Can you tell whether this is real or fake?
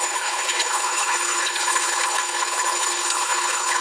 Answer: fake